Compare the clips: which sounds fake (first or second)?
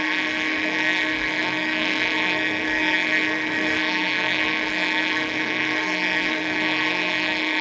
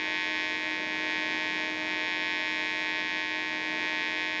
first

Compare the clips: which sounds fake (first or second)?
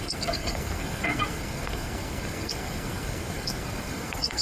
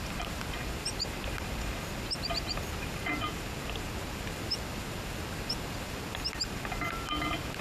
first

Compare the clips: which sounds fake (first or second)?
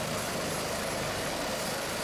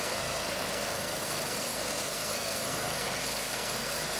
second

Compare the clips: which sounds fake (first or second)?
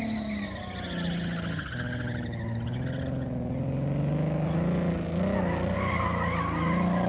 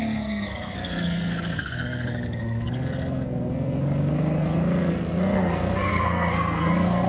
second